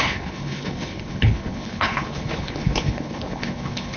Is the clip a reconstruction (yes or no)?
yes